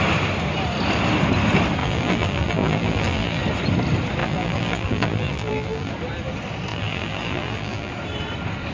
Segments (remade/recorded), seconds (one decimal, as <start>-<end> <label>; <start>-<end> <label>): 0.0-1.8 recorded; 1.8-3.4 remade; 3.4-4.2 recorded; 4.2-5.9 remade; 5.9-6.7 recorded; 6.7-7.9 remade; 7.9-8.7 recorded